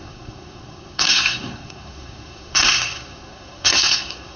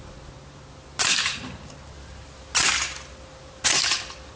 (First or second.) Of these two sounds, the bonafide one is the second